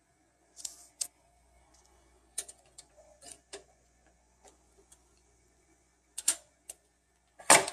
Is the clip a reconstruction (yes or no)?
yes